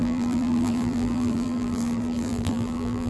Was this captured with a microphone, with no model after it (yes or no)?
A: no